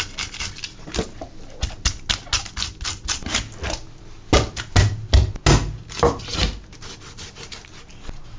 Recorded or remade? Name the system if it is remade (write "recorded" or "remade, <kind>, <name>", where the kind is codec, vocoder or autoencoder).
recorded